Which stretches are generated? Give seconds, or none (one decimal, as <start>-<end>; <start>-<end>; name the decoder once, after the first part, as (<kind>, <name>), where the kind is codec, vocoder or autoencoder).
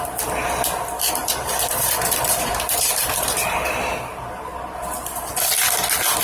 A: 1.2-3.7 (vocoder, BigVGAN v2)